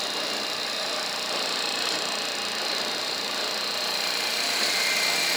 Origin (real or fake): real